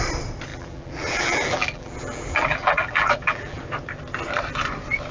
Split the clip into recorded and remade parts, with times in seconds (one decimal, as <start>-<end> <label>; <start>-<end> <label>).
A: 0.0-0.5 recorded; 0.5-3.6 remade; 3.6-5.1 recorded